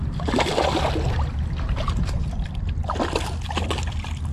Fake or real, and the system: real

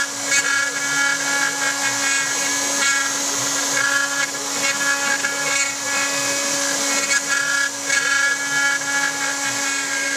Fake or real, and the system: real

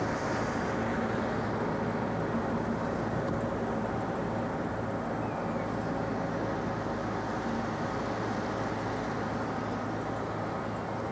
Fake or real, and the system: real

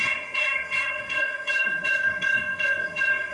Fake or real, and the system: fake, codec, SNAC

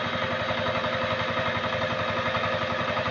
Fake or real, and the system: real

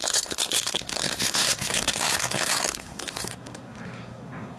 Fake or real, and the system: fake, codec, SNAC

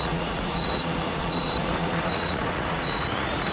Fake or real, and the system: fake, vocoder, Vocos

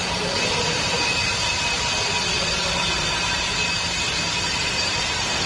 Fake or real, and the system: fake, vocoder, BigVGAN v2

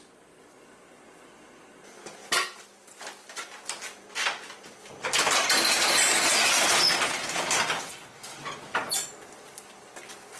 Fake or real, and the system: real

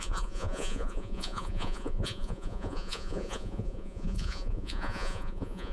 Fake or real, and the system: fake, vocoder, Vocos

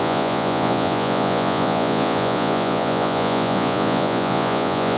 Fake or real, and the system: fake, vocoder, Vocos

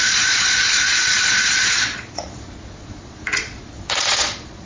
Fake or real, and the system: fake, vocoder, Vocos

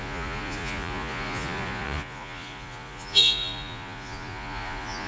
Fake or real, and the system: fake, vocoder, Vocos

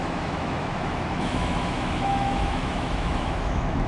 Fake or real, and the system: fake, autoencoder, DAC-VAE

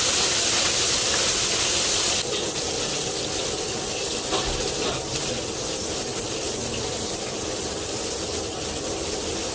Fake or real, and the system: real